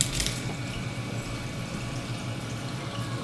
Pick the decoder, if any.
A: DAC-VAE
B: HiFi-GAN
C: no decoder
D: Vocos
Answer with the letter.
C